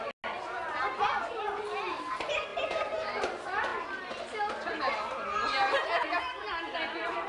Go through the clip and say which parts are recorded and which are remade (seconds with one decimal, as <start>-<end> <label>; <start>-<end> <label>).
0.0-7.3 recorded

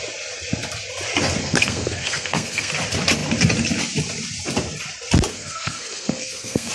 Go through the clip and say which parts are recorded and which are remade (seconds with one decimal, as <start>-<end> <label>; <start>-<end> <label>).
0.0-1.4 recorded; 1.4-2.7 remade; 2.7-5.3 recorded; 5.3-6.7 remade